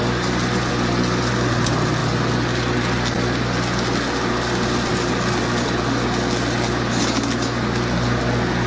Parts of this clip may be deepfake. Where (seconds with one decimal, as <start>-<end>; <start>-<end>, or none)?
none